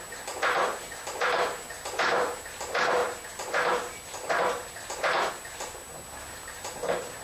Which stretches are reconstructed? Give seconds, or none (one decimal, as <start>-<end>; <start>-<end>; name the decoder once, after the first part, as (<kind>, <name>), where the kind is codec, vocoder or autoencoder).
none